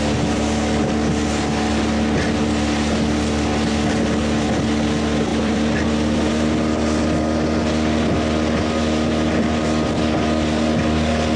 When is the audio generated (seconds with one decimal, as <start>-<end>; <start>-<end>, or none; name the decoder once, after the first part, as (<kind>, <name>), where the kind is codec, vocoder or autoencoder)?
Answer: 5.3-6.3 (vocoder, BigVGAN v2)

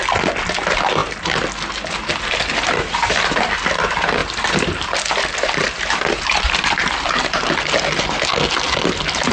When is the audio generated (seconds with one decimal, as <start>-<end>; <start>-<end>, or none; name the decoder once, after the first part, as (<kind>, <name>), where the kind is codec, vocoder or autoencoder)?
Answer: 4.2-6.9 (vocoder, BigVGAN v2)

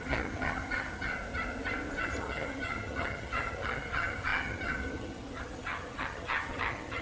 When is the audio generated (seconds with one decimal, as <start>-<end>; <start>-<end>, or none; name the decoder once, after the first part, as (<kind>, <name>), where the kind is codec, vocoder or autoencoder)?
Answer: 0.0-1.1 (vocoder, HiFi-GAN); 2.0-7.0

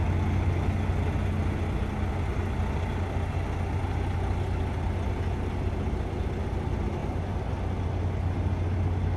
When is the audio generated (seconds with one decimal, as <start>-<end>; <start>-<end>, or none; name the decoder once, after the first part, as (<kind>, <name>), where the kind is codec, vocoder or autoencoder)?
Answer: none

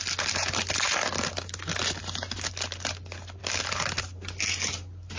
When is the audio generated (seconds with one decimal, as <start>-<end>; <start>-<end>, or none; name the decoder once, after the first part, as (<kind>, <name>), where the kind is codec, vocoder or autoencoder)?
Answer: none